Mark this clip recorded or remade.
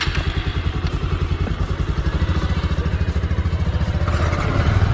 recorded